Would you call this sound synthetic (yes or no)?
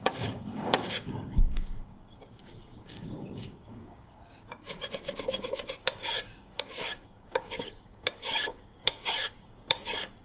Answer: yes